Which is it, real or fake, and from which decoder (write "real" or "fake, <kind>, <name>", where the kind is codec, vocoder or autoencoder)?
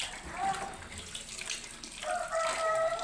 real